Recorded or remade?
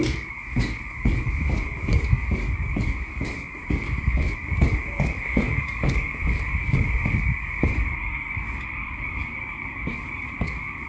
remade